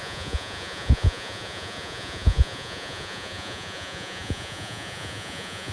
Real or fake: fake